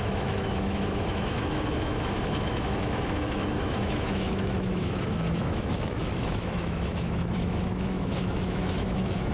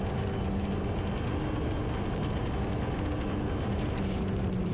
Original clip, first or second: second